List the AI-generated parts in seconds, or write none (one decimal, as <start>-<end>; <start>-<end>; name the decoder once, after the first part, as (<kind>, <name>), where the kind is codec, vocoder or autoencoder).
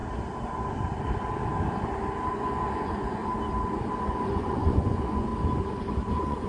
2.3-3.2 (vocoder, Vocos); 4.0-5.3; 6.1-6.5